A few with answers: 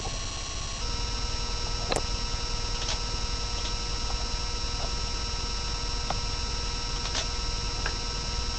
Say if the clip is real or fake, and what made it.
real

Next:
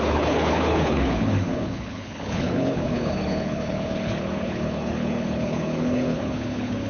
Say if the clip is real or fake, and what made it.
fake, codec, HILCodec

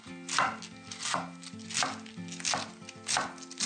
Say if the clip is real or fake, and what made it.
real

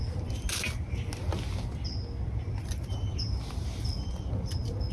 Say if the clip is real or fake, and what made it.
real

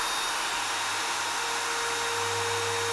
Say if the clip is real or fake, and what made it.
real